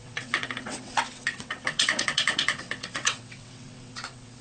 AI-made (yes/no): yes